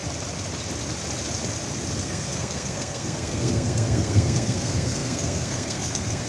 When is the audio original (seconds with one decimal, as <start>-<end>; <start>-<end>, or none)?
0.0-2.0